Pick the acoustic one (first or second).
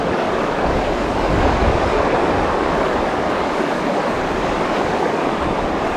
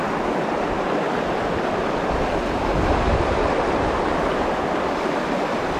second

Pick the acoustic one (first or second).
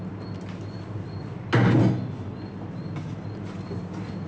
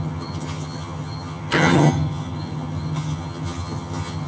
first